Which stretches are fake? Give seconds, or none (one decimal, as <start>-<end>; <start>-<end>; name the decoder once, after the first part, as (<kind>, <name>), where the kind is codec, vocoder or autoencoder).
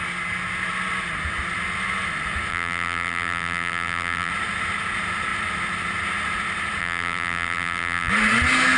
2.5-4.3 (vocoder, BigVGAN v2); 6.8-8.1